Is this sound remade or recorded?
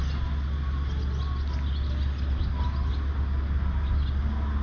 recorded